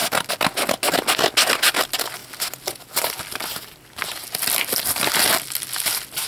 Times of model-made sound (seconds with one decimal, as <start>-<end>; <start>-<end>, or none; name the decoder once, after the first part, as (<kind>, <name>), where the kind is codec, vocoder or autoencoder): none